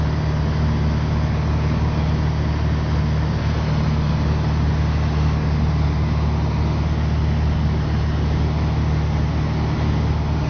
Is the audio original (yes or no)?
yes